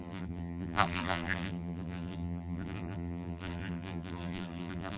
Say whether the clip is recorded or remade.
remade